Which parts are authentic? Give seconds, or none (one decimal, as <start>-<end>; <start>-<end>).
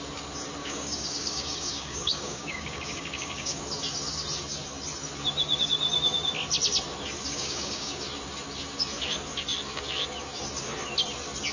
0.0-0.6; 3.6-7.3; 8.0-11.5